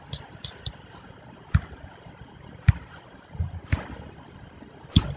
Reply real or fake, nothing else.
real